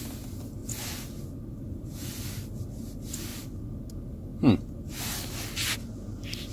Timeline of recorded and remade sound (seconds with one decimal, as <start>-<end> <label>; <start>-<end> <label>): 0.0-6.5 recorded